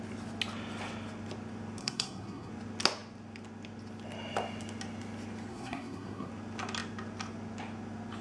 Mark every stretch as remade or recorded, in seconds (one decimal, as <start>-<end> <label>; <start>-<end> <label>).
0.0-1.8 recorded; 1.8-2.5 remade; 2.5-5.5 recorded; 5.5-6.3 remade; 6.3-8.2 recorded